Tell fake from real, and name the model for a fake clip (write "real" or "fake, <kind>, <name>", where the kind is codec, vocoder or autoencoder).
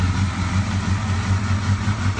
real